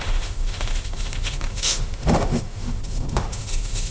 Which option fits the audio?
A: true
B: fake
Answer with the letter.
B